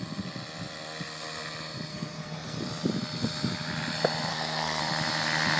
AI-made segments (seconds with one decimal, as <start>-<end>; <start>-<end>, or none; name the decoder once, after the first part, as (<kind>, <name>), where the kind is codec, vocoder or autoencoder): 1.9-2.6 (codec, SNAC); 4.3-4.8